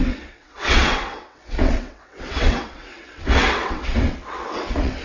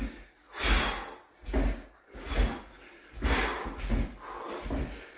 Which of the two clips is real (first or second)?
second